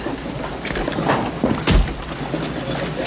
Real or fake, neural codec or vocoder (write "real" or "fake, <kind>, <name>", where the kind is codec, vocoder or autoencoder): real